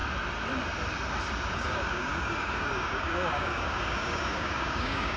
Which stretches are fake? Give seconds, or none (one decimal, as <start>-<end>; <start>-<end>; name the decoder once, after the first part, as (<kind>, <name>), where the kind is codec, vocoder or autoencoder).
1.5-5.2 (codec, DAC)